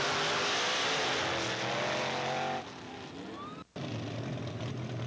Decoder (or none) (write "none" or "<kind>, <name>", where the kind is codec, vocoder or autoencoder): none